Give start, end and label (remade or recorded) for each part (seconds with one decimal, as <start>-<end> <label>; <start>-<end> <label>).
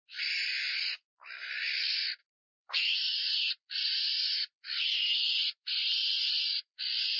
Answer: 0.0-7.2 remade